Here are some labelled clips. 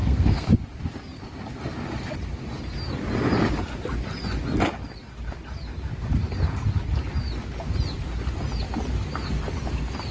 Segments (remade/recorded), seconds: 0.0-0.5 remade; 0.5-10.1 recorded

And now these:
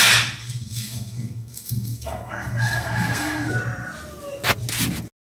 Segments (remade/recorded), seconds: 0.0-0.4 recorded; 0.4-3.5 remade; 3.5-5.2 recorded

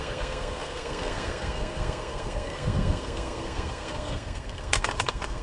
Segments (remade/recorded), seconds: 0.0-5.4 remade

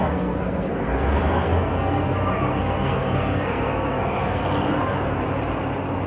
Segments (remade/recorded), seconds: 0.0-4.4 remade; 4.4-6.1 recorded

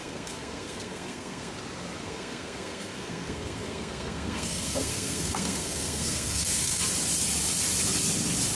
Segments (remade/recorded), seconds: 0.0-1.5 remade; 1.5-2.0 recorded; 2.0-6.8 remade; 6.8-8.5 recorded